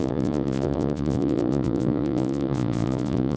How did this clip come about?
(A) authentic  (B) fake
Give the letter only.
B